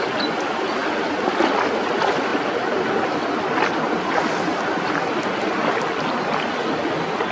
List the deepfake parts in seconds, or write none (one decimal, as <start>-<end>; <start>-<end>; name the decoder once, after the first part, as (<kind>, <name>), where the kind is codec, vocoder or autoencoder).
none